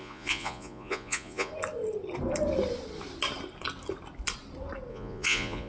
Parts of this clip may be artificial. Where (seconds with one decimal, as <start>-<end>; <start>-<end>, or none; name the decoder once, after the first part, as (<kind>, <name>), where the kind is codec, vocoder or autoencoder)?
0.0-1.5 (vocoder, Vocos); 4.9-5.7